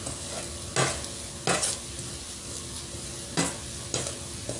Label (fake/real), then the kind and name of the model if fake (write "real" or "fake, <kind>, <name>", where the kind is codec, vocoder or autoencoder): real